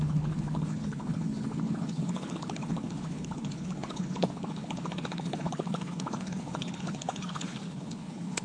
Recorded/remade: remade